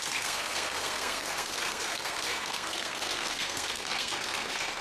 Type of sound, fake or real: fake